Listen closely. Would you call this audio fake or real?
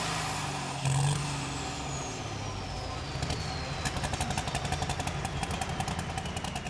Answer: real